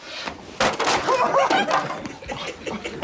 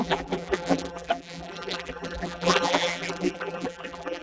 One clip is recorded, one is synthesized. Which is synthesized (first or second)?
second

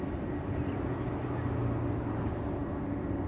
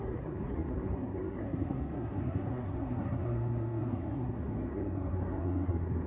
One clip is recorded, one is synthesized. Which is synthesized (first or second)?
second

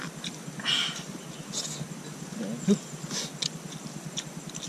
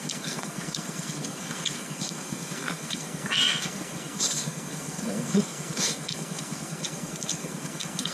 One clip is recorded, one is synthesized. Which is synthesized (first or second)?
second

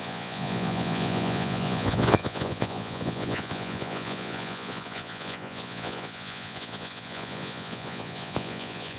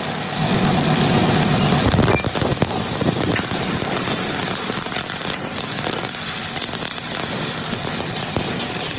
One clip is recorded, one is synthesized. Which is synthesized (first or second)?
first